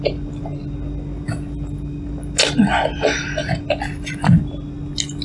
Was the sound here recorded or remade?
recorded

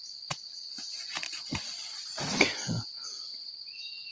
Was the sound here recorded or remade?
remade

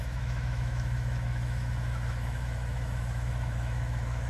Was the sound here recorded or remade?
remade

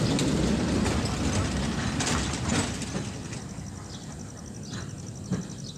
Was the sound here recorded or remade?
recorded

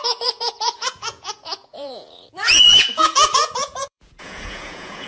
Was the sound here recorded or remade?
remade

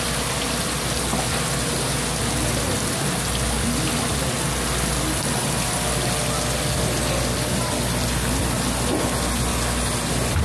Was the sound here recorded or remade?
recorded